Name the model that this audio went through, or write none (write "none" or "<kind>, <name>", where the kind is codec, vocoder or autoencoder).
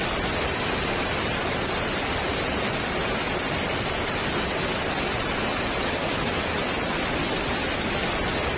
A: none